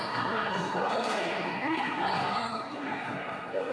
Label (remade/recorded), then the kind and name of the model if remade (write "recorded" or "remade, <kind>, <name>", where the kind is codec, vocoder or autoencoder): remade, codec, SNAC